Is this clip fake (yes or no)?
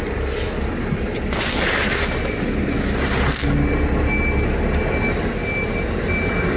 no